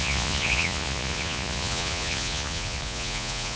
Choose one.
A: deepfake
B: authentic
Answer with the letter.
A